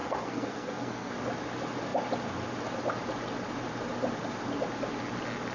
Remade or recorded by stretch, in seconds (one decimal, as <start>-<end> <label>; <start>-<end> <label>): 0.0-1.1 remade; 1.1-5.5 recorded

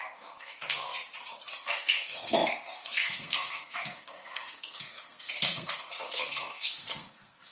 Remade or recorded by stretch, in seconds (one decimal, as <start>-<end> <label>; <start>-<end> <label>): 0.0-0.9 remade; 0.9-1.6 recorded; 1.6-7.5 remade

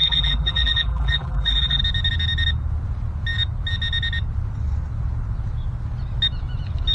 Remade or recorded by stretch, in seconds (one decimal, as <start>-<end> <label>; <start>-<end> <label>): 0.0-1.8 remade; 1.8-6.9 recorded

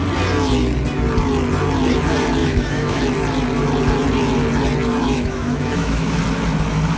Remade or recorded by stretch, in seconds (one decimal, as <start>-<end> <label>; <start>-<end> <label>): 0.0-2.4 recorded; 2.4-3.0 remade; 3.0-5.0 recorded; 5.0-6.2 remade; 6.2-7.0 recorded

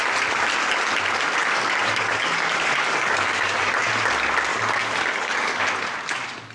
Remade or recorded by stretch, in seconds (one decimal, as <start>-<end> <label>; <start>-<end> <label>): 0.0-1.4 recorded; 1.4-3.9 remade; 3.9-4.5 recorded; 4.5-5.6 remade; 5.6-6.5 recorded